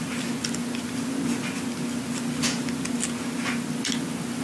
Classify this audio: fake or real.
real